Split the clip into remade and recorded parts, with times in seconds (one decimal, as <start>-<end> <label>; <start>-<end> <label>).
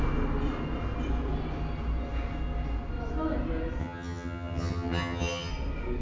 0.0-3.8 recorded; 3.8-5.5 remade; 5.5-6.0 recorded